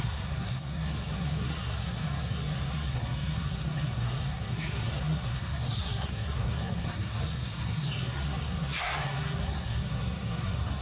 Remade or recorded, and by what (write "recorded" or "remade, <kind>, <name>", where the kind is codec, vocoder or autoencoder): remade, codec, SNAC